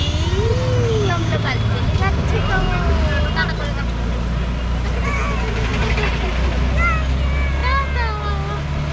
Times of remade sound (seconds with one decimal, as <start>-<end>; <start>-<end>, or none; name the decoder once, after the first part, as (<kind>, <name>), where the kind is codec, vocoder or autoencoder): 0.9-1.5 (codec, DAC)